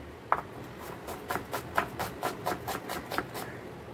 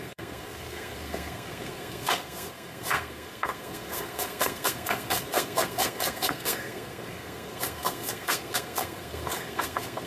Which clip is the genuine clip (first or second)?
first